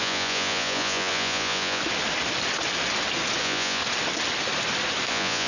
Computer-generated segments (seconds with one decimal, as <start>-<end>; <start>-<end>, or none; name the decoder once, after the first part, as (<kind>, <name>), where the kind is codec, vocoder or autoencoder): 0.0-1.8 (vocoder, Vocos); 3.4-3.8; 5.1-5.5